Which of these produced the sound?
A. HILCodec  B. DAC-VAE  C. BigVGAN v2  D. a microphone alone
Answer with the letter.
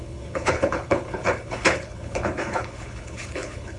A